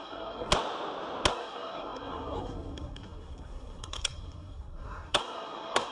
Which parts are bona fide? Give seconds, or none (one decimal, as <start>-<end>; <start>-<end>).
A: 0.5-1.3